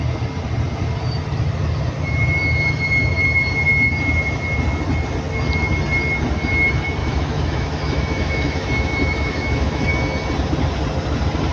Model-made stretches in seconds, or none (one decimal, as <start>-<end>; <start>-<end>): 7.0-9.9